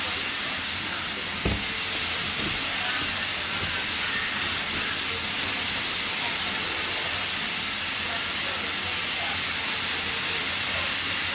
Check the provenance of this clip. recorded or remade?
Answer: recorded